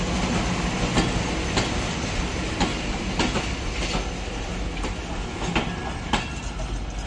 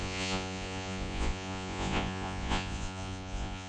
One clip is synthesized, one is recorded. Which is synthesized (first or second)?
second